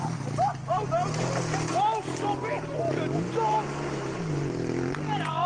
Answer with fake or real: real